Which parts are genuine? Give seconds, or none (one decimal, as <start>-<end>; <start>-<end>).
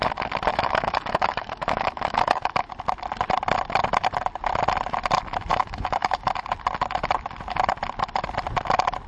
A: 0.0-0.5; 2.7-5.5; 6.3-9.1